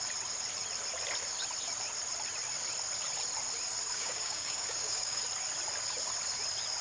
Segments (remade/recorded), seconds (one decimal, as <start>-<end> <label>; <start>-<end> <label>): 0.0-3.9 recorded; 3.9-5.2 remade; 5.2-6.8 recorded